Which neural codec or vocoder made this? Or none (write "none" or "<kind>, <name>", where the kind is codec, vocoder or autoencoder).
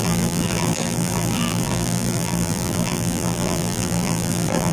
vocoder, BigVGAN v2